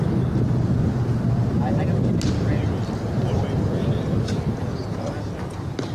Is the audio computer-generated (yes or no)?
no